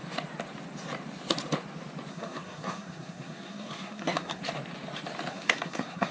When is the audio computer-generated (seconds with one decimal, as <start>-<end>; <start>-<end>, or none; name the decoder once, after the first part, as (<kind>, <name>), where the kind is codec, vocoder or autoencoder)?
2.1-4.4 (codec, SNAC); 5.3-6.1